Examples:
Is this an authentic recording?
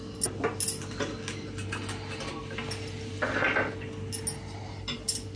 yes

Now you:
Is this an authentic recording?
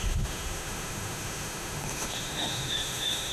no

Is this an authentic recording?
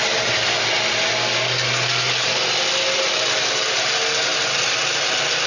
yes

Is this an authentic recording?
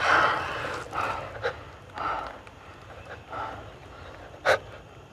yes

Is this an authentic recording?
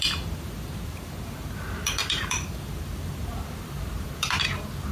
no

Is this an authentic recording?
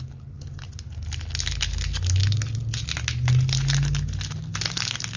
yes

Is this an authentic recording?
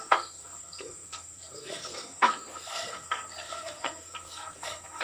no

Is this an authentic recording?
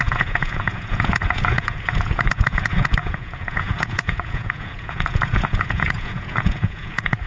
no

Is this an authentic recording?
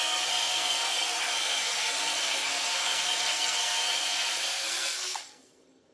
no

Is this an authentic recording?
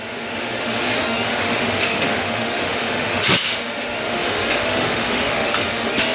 no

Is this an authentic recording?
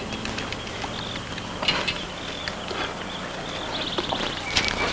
yes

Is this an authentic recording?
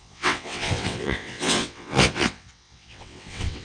no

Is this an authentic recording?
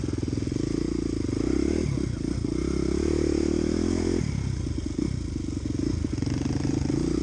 yes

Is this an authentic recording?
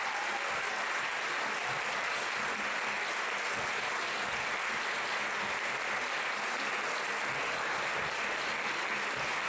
yes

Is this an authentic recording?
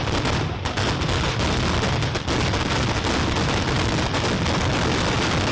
yes